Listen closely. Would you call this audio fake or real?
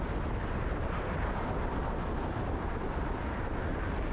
real